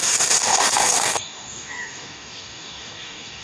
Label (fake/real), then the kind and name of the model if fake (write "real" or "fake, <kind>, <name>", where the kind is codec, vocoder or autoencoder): fake, codec, DAC